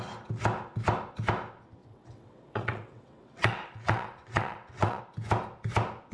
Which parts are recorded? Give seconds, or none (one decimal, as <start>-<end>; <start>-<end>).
0.0-1.8; 5.0-6.1